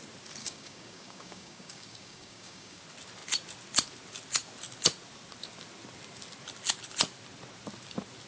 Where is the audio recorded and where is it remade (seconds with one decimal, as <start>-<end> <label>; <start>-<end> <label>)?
0.0-0.4 recorded; 0.4-2.8 remade; 2.8-8.3 recorded